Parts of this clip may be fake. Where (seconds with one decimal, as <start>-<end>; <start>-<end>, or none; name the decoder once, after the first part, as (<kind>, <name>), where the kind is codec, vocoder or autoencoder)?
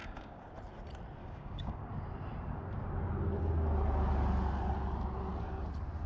0.0-0.5 (codec, DAC); 1.2-1.9